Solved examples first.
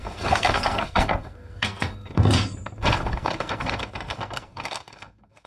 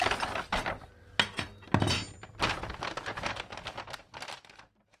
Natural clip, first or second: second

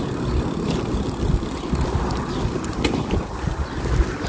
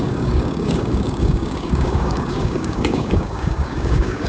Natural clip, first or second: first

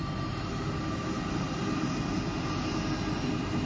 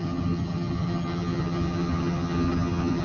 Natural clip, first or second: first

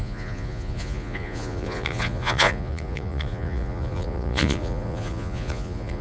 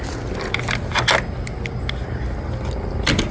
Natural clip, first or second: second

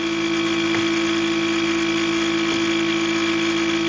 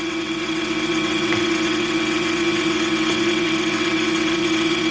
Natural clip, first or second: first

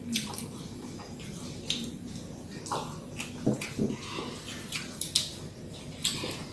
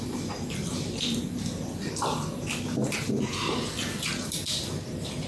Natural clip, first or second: first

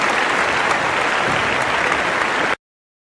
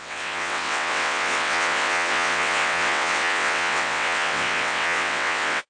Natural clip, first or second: first